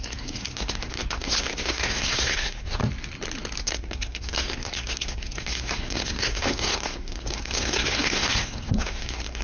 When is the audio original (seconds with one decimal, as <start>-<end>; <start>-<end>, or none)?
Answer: 2.8-3.6